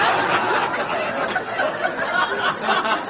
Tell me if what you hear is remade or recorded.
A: recorded